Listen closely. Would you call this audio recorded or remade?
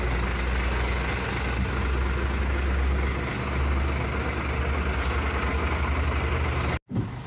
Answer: recorded